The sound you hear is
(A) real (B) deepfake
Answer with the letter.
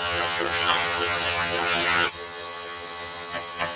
B